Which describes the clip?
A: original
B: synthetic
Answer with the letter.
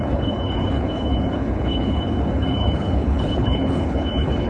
B